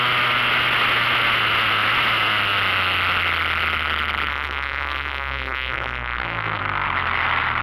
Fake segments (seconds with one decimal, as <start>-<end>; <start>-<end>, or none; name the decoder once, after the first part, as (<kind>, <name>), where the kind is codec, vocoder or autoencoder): 4.3-6.6 (codec, SNAC)